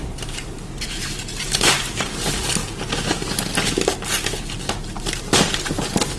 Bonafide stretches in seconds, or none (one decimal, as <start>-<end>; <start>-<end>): 2.6-4.8